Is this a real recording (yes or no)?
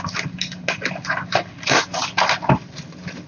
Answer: yes